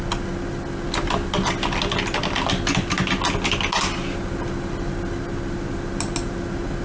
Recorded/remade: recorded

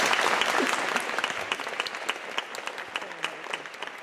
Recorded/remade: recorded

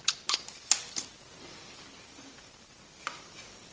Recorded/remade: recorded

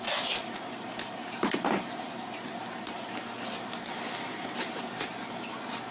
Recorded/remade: recorded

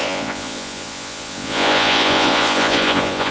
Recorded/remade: remade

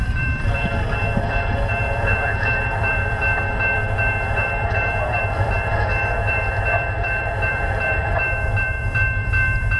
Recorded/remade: remade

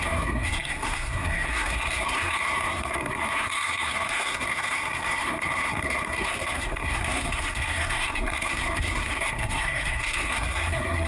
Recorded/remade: remade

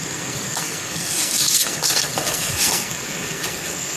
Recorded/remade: remade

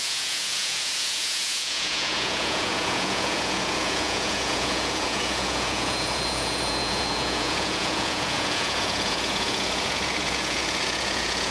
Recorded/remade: remade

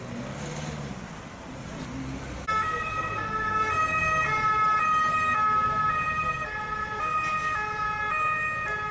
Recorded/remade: recorded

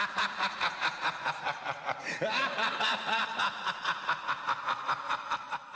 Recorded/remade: remade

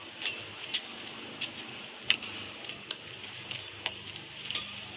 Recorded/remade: recorded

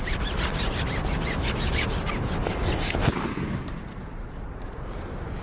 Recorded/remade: recorded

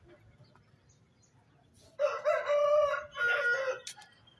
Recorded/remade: recorded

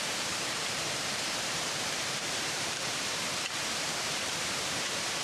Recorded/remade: remade